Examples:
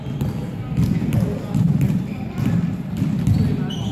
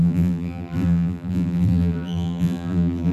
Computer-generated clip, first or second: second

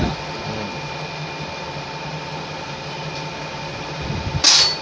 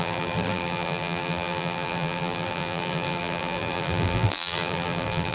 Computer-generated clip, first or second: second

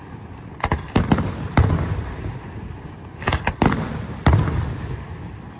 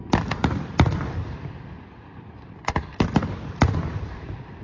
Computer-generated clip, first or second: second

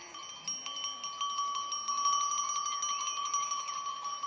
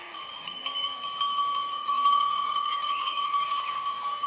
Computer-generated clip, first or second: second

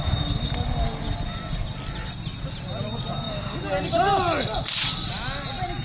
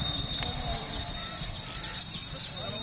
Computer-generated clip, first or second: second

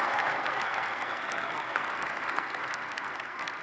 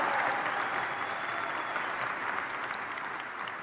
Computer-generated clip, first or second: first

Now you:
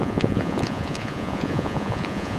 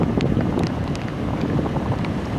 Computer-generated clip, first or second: first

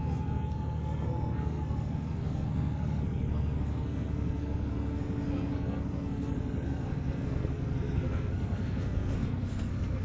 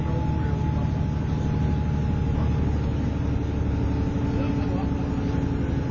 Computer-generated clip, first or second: first